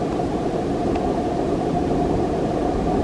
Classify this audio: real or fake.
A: real